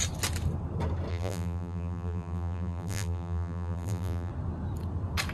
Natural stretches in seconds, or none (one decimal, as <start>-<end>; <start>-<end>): 0.0-1.1; 4.3-5.3

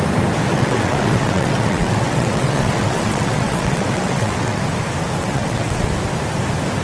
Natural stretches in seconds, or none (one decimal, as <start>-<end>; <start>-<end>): 0.0-0.5; 4.6-5.2; 5.9-6.8

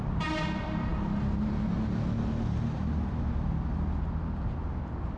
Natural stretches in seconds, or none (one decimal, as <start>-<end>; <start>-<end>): 0.0-5.2

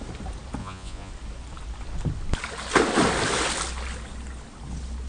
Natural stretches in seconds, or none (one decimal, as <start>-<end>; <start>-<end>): 0.0-0.6; 1.1-5.1

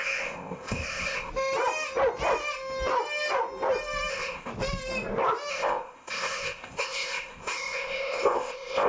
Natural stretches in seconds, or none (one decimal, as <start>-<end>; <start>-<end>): 1.3-4.1; 4.5-5.5

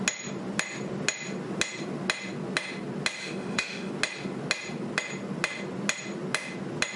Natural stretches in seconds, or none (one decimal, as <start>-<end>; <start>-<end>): 0.0-3.2; 3.9-7.0

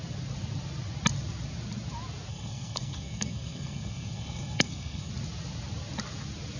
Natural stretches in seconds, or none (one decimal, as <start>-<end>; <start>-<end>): 0.0-2.3; 5.1-6.6

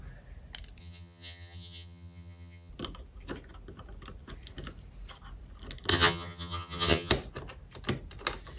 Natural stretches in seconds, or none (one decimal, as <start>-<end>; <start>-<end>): 0.0-0.8; 2.7-5.9; 7.1-8.6